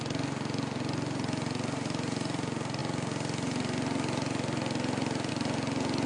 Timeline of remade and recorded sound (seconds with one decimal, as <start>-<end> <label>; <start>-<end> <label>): 0.0-6.1 recorded

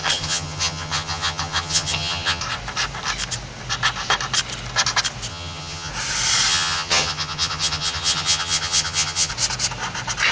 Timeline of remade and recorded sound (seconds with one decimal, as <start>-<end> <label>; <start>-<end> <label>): 0.0-2.4 remade; 2.4-5.3 recorded; 5.3-5.9 remade; 5.9-6.5 recorded; 6.5-9.3 remade; 9.3-10.3 recorded

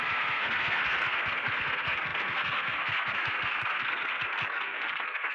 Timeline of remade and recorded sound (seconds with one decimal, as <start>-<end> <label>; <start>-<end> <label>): 0.0-5.3 remade

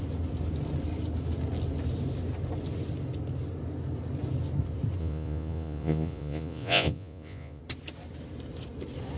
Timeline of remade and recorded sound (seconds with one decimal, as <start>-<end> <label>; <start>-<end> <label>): 0.0-5.0 recorded; 5.0-7.6 remade; 7.6-9.2 recorded

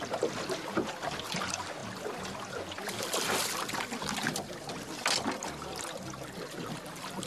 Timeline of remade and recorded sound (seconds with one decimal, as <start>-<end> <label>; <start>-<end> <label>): 0.0-7.3 recorded

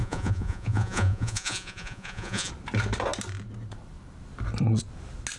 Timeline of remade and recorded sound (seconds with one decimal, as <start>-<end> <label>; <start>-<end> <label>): 0.0-2.5 remade; 2.5-5.4 recorded

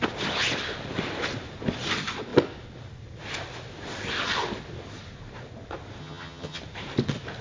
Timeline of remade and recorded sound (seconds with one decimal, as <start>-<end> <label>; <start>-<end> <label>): 0.0-6.0 recorded; 6.0-6.6 remade; 6.6-7.4 recorded